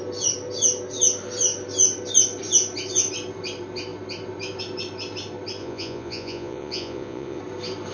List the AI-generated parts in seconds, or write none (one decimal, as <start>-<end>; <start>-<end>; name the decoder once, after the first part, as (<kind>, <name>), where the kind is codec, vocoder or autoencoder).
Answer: 5.6-7.4 (vocoder, Vocos)